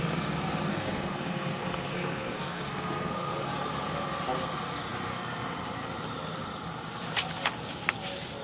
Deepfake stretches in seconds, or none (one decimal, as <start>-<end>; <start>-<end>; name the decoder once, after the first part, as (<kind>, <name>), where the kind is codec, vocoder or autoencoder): 0.7-3.5 (codec, SNAC)